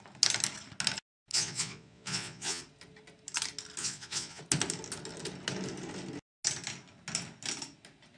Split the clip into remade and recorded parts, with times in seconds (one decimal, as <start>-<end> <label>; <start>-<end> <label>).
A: 0.0-1.3 recorded; 1.3-2.6 remade; 2.6-3.8 recorded; 3.8-4.4 remade; 4.4-8.2 recorded